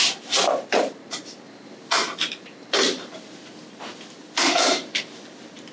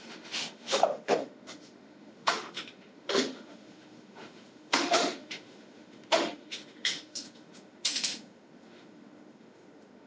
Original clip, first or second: first